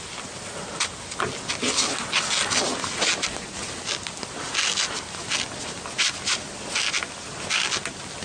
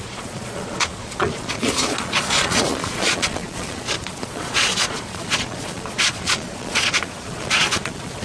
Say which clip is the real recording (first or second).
first